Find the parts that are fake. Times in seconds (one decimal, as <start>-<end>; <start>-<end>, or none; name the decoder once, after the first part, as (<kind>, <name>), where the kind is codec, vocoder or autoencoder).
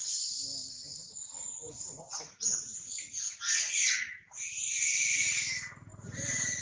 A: 0.9-4.6 (vocoder, Vocos)